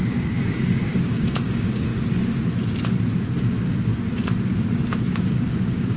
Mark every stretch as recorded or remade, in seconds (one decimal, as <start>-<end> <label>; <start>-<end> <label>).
0.0-1.9 remade; 1.9-3.4 recorded; 3.4-3.9 remade; 3.9-5.1 recorded; 5.1-6.0 remade